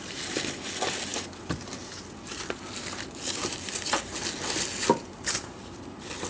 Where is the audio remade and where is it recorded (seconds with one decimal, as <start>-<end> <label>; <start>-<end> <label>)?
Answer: 0.0-6.3 recorded

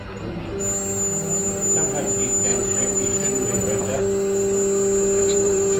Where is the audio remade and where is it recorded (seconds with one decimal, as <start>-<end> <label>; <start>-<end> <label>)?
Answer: 0.0-2.5 recorded; 2.5-4.0 remade; 4.0-5.2 recorded; 5.2-5.8 remade

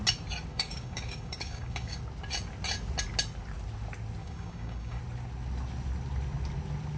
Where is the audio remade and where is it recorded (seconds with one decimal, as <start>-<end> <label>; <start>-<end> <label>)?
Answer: 0.0-0.5 recorded; 0.5-2.0 remade; 2.0-4.2 recorded; 4.2-5.0 remade; 5.0-7.0 recorded

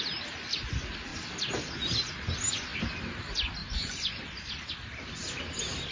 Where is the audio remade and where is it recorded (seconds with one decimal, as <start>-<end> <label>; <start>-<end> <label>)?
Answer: 0.0-3.6 recorded; 3.6-4.2 remade; 4.2-5.9 recorded

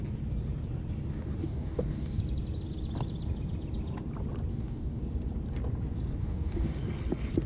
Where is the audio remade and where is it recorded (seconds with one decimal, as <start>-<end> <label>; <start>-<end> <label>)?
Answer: 0.0-1.4 recorded; 1.4-2.2 remade; 2.2-4.5 recorded; 4.5-5.0 remade; 5.0-6.2 recorded; 6.2-6.7 remade; 6.7-7.5 recorded

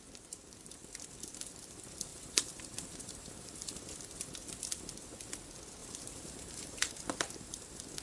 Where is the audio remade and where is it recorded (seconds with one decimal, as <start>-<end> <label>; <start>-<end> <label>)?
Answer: 0.0-2.1 recorded; 2.1-3.9 remade; 3.9-5.8 recorded; 5.8-7.2 remade; 7.2-8.0 recorded

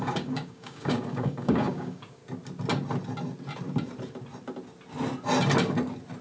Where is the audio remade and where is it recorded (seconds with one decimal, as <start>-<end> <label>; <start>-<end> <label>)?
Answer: 0.0-2.2 remade; 2.2-6.2 recorded

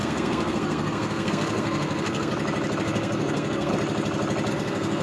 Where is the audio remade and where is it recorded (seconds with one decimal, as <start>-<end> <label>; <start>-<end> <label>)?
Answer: 0.0-2.3 remade; 2.3-2.8 recorded; 2.8-3.7 remade; 3.7-4.5 recorded; 4.5-5.0 remade